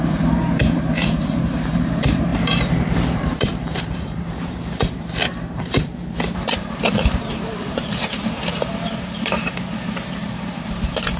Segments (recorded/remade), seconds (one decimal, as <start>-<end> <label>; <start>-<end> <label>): 0.0-11.2 remade